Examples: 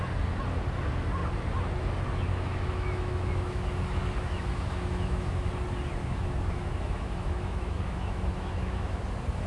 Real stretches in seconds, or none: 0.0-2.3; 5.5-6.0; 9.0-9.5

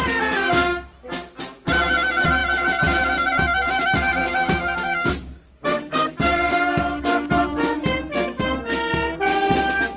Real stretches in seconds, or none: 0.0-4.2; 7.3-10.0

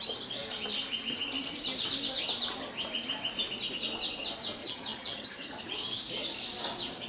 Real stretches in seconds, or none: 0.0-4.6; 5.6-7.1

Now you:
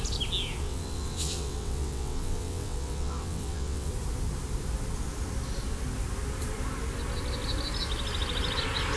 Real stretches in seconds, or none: 0.0-0.6; 3.9-9.0

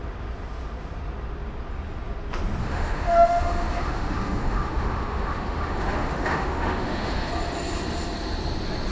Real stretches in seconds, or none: 0.0-2.6; 7.3-8.9

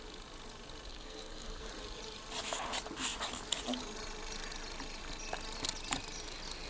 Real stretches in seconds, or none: 0.0-0.9; 1.7-6.7